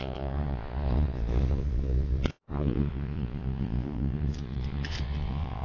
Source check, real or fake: fake